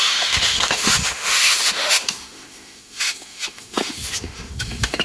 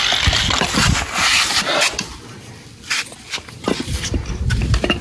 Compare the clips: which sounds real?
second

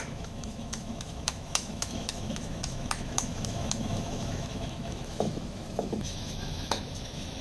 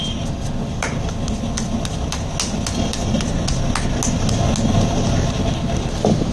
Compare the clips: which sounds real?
second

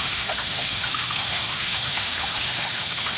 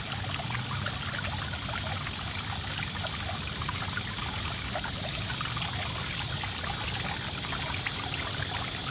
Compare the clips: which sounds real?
second